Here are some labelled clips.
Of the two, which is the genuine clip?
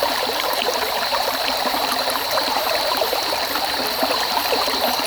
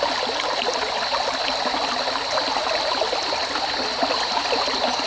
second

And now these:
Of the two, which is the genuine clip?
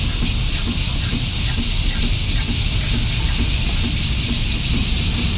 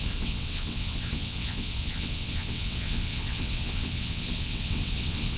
first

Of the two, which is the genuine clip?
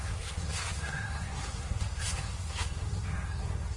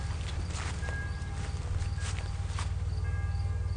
second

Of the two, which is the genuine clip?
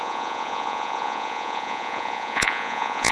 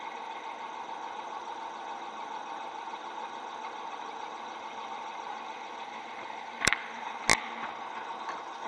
second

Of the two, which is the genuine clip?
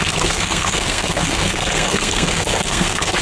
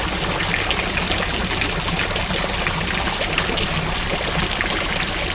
second